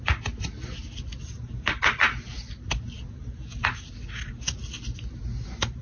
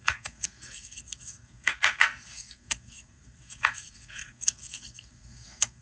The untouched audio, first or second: first